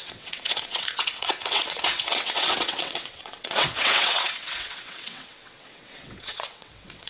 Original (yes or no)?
no